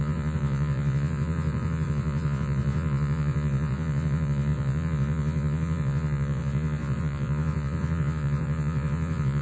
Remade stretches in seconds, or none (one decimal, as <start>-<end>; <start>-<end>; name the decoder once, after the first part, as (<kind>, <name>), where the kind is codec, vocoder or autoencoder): 0.0-9.4 (vocoder, Vocos)